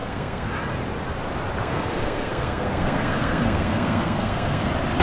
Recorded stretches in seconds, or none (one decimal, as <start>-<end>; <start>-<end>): 0.5-1.6; 4.6-5.0